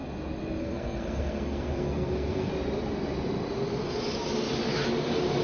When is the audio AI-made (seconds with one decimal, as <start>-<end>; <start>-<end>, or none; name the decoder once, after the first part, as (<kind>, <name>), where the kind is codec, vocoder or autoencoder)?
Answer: 0.6-2.5 (codec, SNAC)

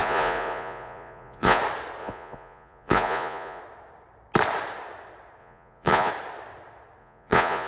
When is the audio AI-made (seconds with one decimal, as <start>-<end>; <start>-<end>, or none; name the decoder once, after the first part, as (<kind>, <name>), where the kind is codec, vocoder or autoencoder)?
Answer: 0.0-1.6 (vocoder, Vocos); 2.0-3.6; 5.4-6.1; 7.0-7.7

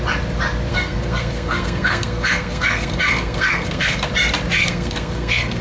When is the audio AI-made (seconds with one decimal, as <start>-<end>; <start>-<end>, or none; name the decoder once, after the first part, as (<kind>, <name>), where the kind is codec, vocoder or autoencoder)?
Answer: 0.7-4.1 (codec, SNAC); 4.6-5.6

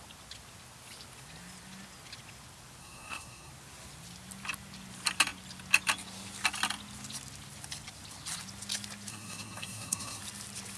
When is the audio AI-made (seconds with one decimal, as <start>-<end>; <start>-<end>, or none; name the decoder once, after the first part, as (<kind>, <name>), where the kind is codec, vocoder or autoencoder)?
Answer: 2.8-3.5 (codec, SNAC); 9.1-10.2

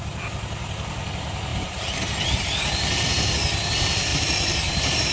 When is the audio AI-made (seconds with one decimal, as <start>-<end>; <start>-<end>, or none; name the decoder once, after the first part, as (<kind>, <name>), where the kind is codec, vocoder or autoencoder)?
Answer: 1.5-3.3 (vocoder, BigVGAN v2); 4.1-5.1

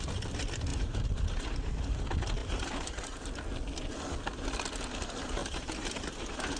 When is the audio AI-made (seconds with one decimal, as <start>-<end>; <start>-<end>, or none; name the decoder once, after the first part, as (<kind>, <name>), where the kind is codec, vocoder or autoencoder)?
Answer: 0.7-2.0 (vocoder, BigVGAN v2); 2.4-3.3; 5.4-6.6

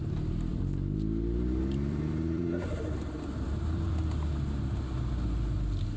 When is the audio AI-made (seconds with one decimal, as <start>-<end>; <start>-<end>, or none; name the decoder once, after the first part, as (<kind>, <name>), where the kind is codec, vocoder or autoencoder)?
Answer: 0.5-3.9 (vocoder, BigVGAN v2)